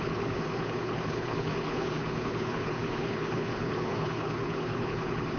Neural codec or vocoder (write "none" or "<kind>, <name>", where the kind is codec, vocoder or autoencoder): codec, HILCodec